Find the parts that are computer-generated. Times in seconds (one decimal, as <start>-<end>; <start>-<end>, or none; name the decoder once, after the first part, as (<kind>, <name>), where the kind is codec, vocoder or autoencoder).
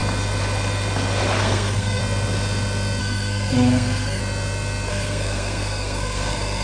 1.4-2.0 (codec, SNAC); 3.0-4.2; 4.9-6.6